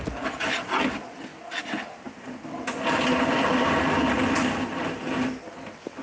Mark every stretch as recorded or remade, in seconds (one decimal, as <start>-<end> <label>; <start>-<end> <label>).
0.0-6.0 recorded